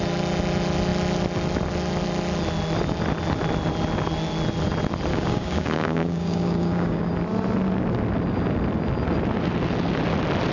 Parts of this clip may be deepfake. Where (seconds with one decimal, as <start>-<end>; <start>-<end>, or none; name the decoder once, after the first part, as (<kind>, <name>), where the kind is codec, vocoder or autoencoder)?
5.1-7.1 (codec, DAC)